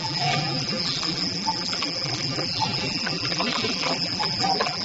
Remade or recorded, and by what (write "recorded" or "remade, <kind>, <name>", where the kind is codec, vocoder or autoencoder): remade, vocoder, BigVGAN v2